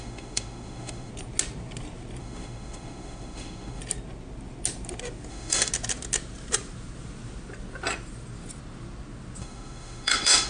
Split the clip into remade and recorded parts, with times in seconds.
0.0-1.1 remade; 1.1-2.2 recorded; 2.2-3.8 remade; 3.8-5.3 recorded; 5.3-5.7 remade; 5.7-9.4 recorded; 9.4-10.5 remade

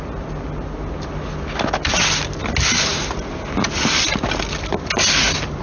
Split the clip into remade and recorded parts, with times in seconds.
0.0-5.6 recorded

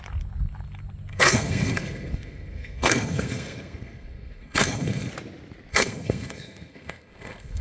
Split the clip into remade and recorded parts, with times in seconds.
0.0-1.1 recorded; 1.1-5.1 remade; 5.1-5.7 recorded; 5.7-7.6 remade